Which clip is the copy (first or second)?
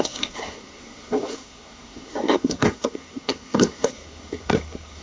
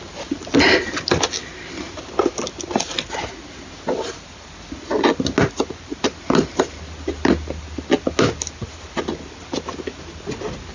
first